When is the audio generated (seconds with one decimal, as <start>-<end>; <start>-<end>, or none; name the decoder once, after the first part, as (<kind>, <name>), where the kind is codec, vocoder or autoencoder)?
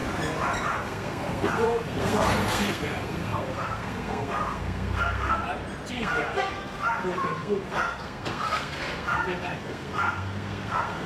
0.7-5.4 (codec, SNAC); 5.9-11.1